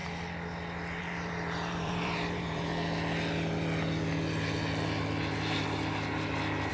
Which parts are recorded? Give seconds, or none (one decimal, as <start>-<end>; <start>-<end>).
0.0-1.0; 2.7-6.7

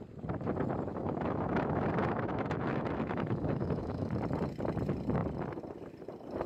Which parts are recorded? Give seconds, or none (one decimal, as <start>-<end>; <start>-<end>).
0.0-0.9; 4.1-6.5